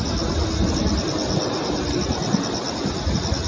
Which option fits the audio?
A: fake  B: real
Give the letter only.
B